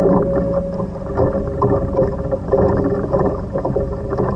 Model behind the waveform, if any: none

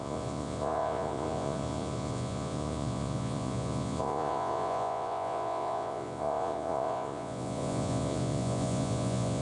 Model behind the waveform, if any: vocoder, Vocos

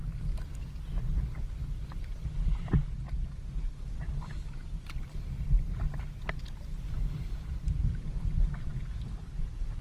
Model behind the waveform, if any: none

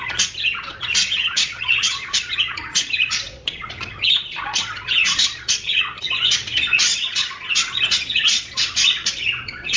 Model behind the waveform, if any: vocoder, Vocos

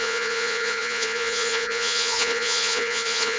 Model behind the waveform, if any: vocoder, Vocos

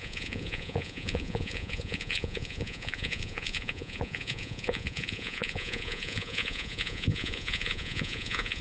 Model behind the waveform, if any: vocoder, Vocos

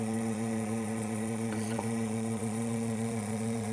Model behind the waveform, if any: vocoder, Vocos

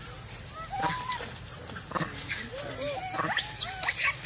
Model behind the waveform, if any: none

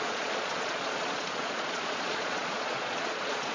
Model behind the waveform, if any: vocoder, Vocos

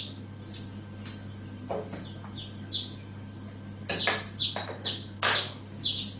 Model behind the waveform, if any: none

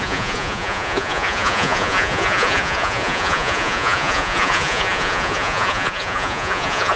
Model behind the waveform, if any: vocoder, Vocos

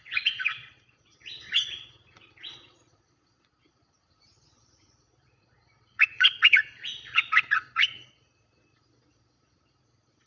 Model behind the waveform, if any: vocoder, Vocos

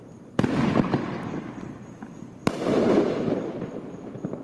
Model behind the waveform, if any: none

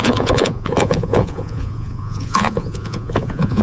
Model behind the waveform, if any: vocoder, Vocos